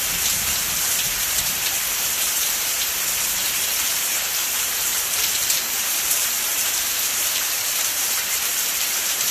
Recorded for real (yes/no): no